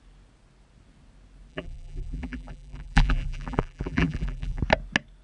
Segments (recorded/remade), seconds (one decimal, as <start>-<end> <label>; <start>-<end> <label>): 0.0-1.5 recorded; 1.5-4.6 remade; 4.6-5.2 recorded